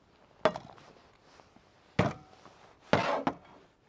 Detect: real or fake real